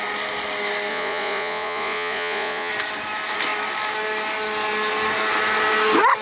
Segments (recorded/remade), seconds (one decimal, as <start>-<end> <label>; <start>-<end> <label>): 0.0-0.9 recorded; 0.9-2.7 remade; 2.7-6.2 recorded